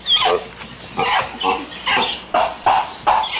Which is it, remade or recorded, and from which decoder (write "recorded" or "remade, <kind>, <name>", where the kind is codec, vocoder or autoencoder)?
recorded